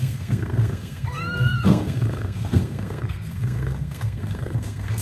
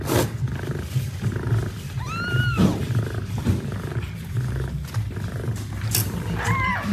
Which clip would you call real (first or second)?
second